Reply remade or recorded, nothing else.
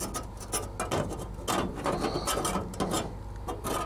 recorded